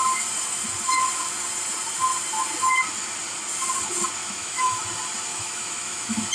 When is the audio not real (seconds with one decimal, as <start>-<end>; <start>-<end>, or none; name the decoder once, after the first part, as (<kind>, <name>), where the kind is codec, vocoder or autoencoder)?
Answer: 4.2-4.8 (autoencoder, DAC-VAE); 5.3-6.3